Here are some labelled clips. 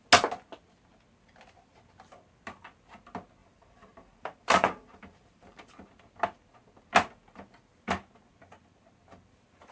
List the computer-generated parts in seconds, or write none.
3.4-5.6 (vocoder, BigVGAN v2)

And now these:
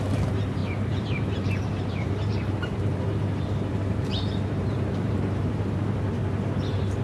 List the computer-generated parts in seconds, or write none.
0.0-6.2 (vocoder, BigVGAN v2)

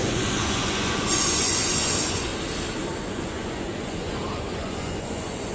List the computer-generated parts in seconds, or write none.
0.0-2.3 (vocoder, Vocos); 3.0-5.5

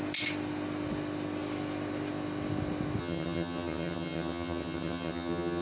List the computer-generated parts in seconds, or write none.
3.0-5.6 (vocoder, HiFi-GAN)

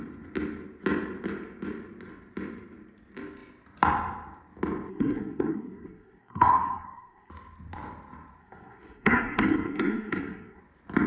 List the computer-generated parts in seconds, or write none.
4.9-7.3 (codec, SNAC); 8.4-10.6

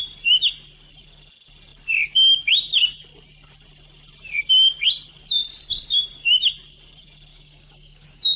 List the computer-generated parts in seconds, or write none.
7.3-8.4 (codec, DAC)

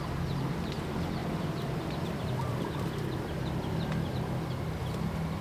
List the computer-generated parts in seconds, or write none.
1.2-4.4 (vocoder, BigVGAN v2)